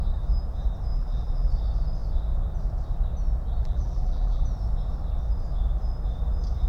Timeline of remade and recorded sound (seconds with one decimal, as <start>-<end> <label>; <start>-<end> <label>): 0.0-0.9 recorded; 0.9-1.5 remade; 1.5-3.6 recorded; 3.6-4.5 remade; 4.5-6.7 recorded